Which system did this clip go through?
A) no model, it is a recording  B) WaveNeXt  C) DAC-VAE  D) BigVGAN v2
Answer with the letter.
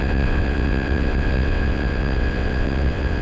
B